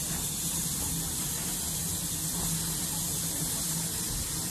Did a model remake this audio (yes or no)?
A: no